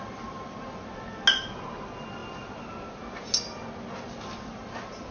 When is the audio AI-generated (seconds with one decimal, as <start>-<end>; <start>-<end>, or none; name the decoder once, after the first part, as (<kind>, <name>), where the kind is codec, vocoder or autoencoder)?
none